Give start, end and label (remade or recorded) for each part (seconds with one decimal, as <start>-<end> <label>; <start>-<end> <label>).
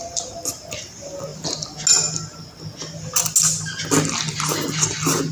0.0-5.3 recorded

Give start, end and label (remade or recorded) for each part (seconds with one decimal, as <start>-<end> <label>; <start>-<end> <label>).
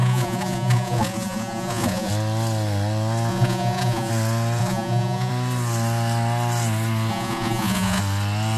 0.0-2.1 remade; 2.1-3.3 recorded; 3.3-4.1 remade; 4.1-4.6 recorded; 4.6-5.3 remade; 5.3-7.1 recorded; 7.1-8.0 remade; 8.0-8.6 recorded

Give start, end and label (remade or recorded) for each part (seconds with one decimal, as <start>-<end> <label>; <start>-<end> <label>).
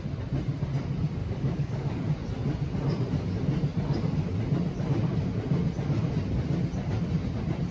0.0-1.2 recorded; 1.2-2.0 remade; 2.0-7.7 recorded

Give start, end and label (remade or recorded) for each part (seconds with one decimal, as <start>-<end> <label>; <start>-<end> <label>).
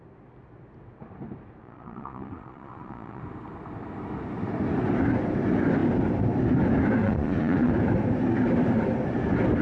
0.0-1.6 recorded; 1.6-3.2 remade; 3.2-7.0 recorded; 7.0-7.7 remade; 7.7-9.6 recorded